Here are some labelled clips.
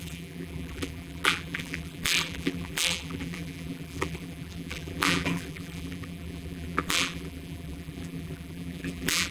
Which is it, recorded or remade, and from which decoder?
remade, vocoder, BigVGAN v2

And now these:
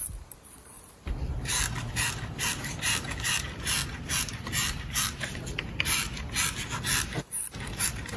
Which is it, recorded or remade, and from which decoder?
recorded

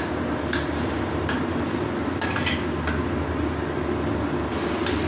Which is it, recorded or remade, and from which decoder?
recorded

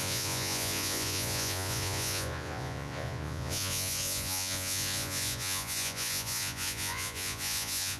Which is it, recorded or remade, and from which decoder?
remade, vocoder, Vocos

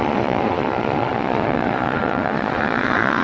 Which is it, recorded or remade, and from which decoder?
remade, vocoder, Vocos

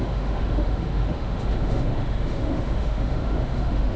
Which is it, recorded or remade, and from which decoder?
remade, autoencoder, DAC-VAE